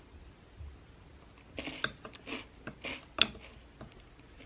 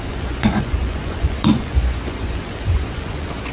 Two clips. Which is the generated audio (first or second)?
second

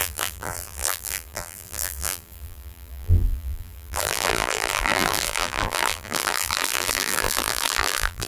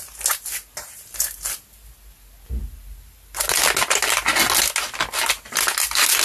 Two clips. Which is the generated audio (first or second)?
first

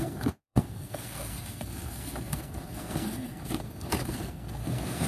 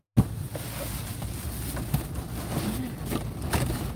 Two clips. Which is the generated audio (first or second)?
first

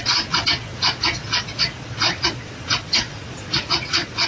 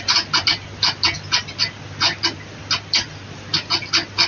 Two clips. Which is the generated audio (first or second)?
first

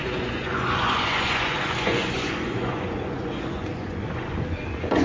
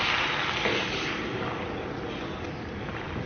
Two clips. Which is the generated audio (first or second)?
first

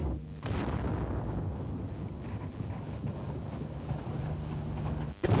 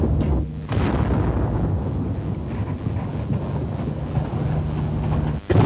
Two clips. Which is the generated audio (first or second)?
first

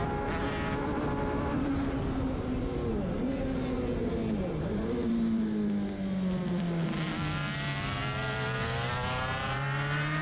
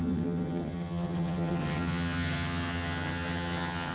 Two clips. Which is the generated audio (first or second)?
second